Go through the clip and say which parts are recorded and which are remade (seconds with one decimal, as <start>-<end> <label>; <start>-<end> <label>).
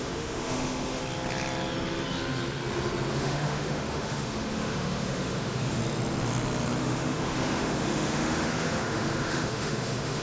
0.0-1.0 remade; 1.0-3.1 recorded; 3.1-5.8 remade; 5.8-6.8 recorded; 6.8-10.2 remade